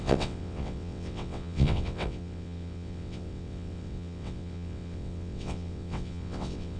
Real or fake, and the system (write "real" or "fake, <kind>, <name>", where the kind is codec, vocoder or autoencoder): fake, vocoder, WaveNeXt